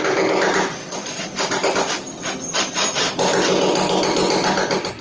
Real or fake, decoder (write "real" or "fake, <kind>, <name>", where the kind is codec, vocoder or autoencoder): real